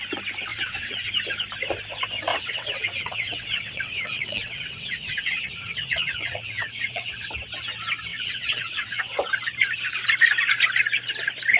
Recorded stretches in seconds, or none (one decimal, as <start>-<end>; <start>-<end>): 0.0-0.5; 1.1-2.3; 7.3-8.1; 9.2-11.6